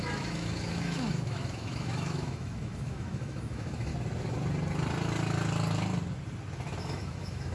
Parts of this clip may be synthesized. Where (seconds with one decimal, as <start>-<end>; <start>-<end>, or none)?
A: 0.0-3.9; 6.8-7.5